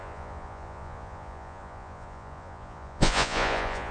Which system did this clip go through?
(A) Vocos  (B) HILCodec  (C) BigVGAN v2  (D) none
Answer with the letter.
A